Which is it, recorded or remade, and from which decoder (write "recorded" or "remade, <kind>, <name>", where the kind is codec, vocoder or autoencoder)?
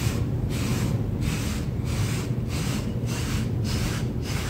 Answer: recorded